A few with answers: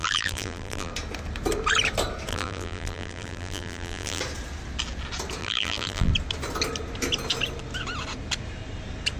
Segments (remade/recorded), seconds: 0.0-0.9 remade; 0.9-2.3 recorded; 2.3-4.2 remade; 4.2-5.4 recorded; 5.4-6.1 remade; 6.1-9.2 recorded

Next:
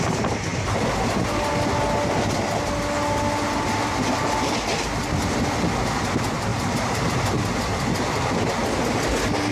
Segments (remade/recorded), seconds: 0.0-6.5 recorded; 6.5-7.0 remade; 7.0-9.5 recorded

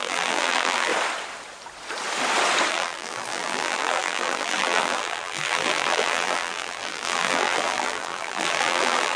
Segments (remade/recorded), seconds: 0.0-0.9 remade; 0.9-2.7 recorded; 2.7-9.2 remade

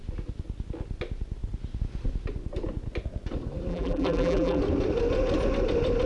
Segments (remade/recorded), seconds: 0.0-3.7 recorded; 3.7-4.6 remade; 4.6-6.1 recorded

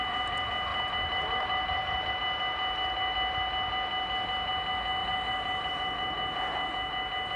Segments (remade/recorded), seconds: 0.0-0.7 recorded; 0.7-2.1 remade; 2.1-5.0 recorded; 5.0-5.7 remade; 5.7-7.4 recorded

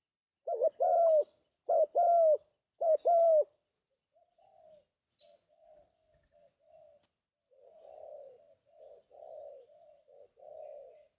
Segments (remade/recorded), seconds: 0.0-11.2 recorded

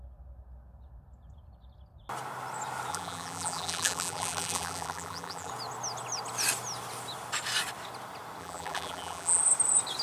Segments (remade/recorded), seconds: 0.0-2.9 recorded; 2.9-5.5 remade; 5.5-8.4 recorded; 8.4-9.4 remade; 9.4-10.0 recorded

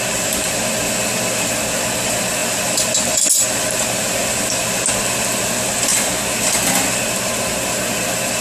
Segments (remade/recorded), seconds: 0.0-8.4 recorded